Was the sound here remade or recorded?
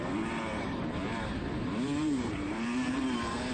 remade